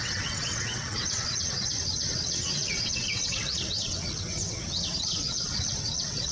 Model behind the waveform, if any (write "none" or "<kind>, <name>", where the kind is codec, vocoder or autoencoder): vocoder, WaveNeXt